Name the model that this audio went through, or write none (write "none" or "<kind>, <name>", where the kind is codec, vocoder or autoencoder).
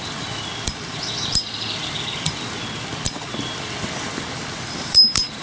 none